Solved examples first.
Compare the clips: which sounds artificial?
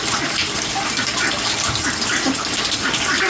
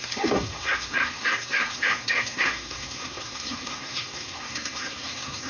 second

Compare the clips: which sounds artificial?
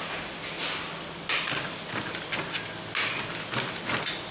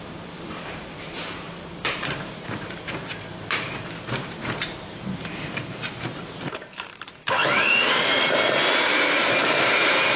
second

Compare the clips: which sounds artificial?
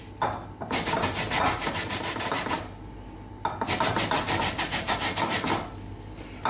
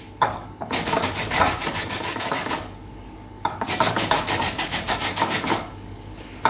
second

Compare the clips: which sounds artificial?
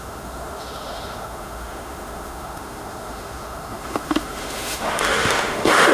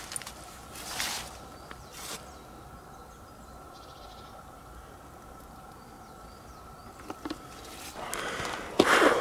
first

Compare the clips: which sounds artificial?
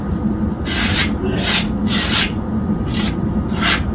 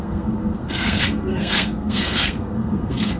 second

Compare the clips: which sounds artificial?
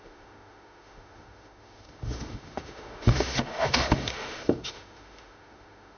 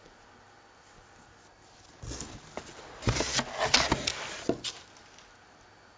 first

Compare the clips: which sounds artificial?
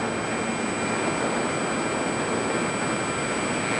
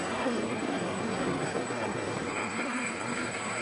second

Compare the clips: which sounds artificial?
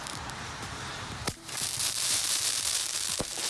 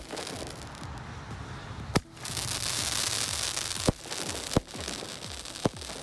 first